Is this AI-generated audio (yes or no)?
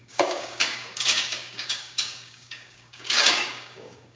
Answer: yes